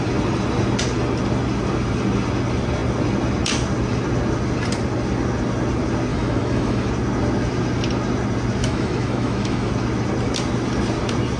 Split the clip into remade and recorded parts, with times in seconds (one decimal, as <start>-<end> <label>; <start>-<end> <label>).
0.0-6.1 recorded; 6.1-6.9 remade; 6.9-8.6 recorded; 8.6-9.7 remade; 9.7-11.4 recorded